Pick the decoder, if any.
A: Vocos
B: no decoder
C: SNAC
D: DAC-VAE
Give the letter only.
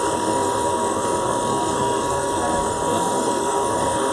C